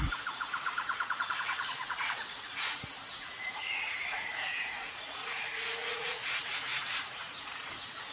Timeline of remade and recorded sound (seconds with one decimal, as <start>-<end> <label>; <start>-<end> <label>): 0.0-8.1 remade